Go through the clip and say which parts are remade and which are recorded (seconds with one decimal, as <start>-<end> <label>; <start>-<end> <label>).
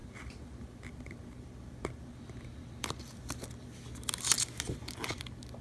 0.0-3.2 remade; 3.2-5.6 recorded